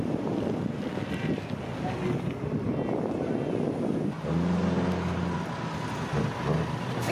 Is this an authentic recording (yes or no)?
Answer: yes